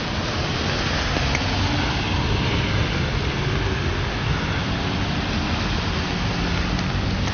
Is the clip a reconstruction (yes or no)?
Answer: no